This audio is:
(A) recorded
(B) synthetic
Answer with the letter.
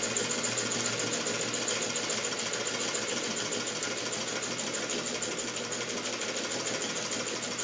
A